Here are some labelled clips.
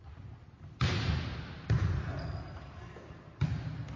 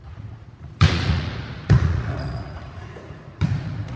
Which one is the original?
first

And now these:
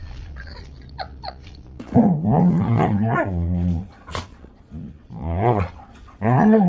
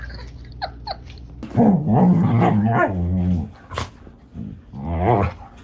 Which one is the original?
second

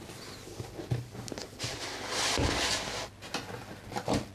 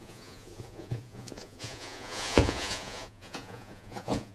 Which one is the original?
first